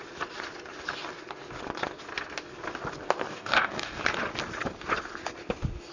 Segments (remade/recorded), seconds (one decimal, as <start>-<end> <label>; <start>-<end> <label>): 0.0-3.3 recorded; 3.3-4.0 remade; 4.0-5.9 recorded